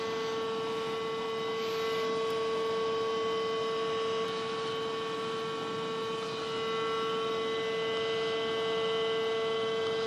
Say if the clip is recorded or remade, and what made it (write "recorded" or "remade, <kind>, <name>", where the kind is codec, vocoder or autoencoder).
recorded